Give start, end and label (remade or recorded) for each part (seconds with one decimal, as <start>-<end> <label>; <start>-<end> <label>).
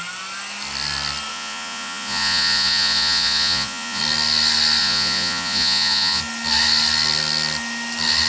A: 0.0-1.3 recorded; 1.3-4.0 remade; 4.0-4.8 recorded; 4.8-6.2 remade; 6.2-8.3 recorded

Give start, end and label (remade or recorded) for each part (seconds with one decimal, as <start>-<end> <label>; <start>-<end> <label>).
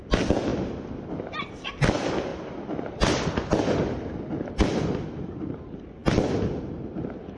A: 0.0-7.4 recorded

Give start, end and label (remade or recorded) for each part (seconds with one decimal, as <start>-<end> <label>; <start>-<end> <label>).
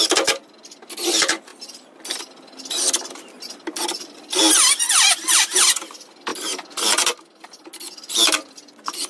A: 0.0-9.1 recorded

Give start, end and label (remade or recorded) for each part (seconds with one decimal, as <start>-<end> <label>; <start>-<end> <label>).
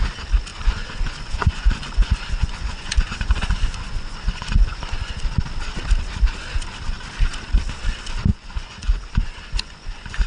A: 0.0-0.5 recorded; 0.5-5.2 remade; 5.2-8.3 recorded; 8.3-10.3 remade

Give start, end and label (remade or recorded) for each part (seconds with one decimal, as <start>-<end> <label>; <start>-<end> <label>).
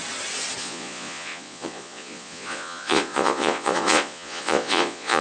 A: 0.0-0.6 recorded; 0.6-5.2 remade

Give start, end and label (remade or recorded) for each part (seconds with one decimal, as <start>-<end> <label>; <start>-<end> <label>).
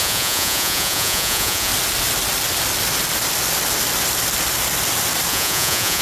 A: 0.0-1.7 remade; 1.7-5.3 recorded; 5.3-6.0 remade